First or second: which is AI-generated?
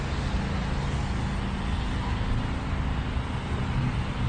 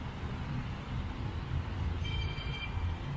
second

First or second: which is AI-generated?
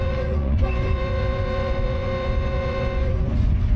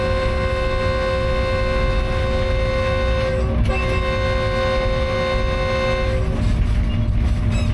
first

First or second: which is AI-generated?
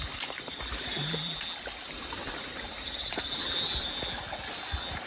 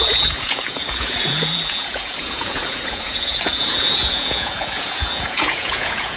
second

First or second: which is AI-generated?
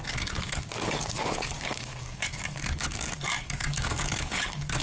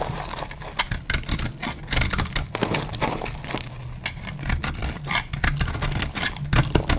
first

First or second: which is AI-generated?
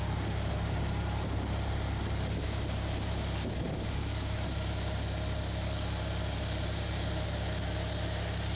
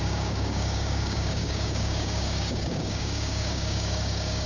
second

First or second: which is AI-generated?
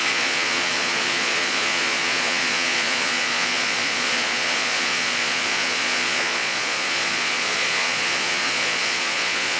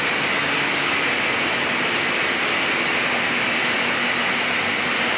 first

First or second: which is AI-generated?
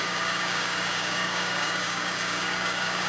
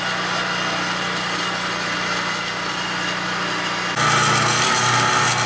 first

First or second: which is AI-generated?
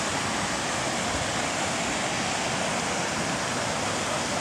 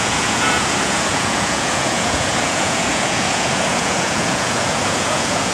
second